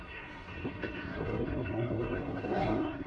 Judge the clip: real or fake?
fake